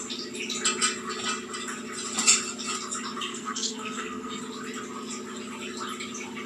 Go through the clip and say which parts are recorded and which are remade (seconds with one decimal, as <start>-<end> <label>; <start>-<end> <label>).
0.0-3.3 recorded; 3.3-4.4 remade; 4.4-6.5 recorded